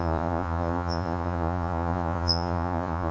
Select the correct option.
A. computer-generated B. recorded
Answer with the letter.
A